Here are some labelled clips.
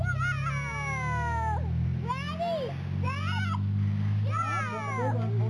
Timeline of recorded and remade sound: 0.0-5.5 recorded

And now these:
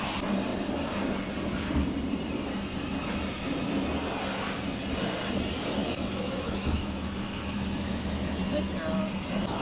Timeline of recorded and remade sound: 0.0-5.8 recorded; 5.8-8.4 remade; 8.4-9.6 recorded

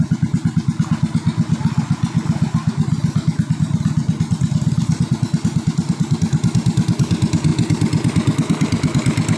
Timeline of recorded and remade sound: 0.0-9.4 recorded

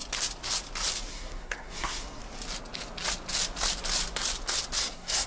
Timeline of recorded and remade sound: 0.0-1.1 recorded; 1.1-2.2 remade; 2.2-4.8 recorded; 4.8-5.3 remade

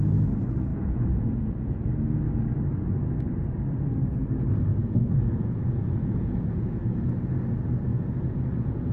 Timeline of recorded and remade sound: 0.0-0.7 recorded; 0.7-1.9 remade; 1.9-4.8 recorded; 4.8-6.8 remade; 6.8-7.9 recorded; 7.9-8.9 remade